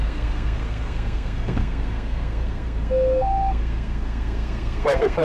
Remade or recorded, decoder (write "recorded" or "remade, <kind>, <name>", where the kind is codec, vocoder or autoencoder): remade, codec, SNAC